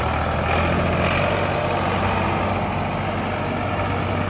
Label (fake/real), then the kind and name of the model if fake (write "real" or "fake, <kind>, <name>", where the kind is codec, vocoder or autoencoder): real